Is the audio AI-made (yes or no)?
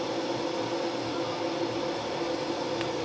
no